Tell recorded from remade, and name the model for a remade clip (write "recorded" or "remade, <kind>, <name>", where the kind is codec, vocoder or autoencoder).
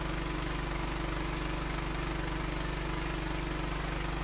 recorded